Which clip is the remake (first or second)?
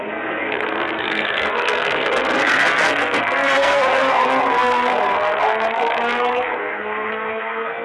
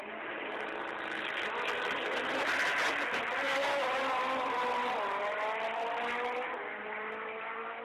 first